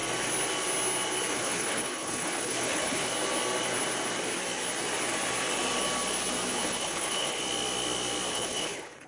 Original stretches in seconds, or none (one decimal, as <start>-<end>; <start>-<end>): 0.0-1.3; 3.1-6.5; 7.4-8.3